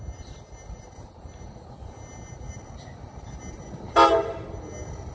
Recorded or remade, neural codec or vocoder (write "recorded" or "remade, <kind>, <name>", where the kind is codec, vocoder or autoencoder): recorded